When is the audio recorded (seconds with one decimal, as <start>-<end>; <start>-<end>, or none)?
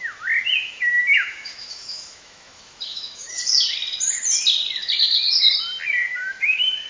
0.0-0.6; 3.4-6.0